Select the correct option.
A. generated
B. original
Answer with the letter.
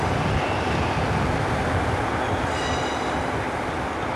B